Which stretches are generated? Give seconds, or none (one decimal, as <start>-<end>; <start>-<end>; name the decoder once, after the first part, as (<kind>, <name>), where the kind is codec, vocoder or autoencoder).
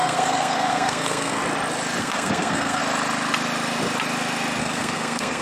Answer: 0.0-1.4 (codec, SNAC); 2.0-2.8; 4.6-5.4